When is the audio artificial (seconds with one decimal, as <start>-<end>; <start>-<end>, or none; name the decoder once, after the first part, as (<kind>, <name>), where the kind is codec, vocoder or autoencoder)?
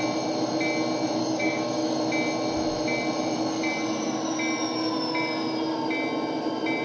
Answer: 1.2-2.0 (codec, DAC)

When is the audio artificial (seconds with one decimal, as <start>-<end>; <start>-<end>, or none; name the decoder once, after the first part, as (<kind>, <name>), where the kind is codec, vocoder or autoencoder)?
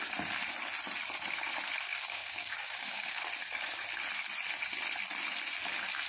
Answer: 1.9-3.2 (codec, DAC)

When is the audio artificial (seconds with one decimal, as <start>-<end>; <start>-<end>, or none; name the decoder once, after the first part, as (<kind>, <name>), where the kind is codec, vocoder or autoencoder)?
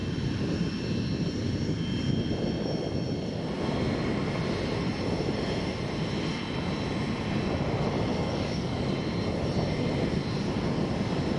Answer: 8.1-8.9 (codec, DAC)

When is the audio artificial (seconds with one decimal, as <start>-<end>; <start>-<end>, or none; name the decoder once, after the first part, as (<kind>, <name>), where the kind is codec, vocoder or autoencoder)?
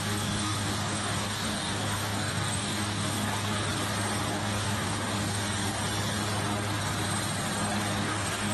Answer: 0.0-3.7 (codec, DAC); 4.3-5.8; 8.0-8.5